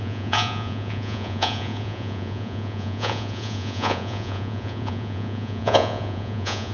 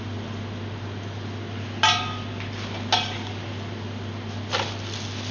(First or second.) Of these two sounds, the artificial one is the first